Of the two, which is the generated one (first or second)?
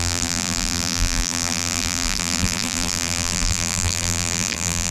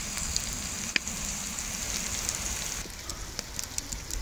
first